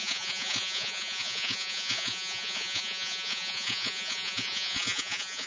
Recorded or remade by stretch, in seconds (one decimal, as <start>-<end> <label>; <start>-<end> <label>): 0.0-5.5 remade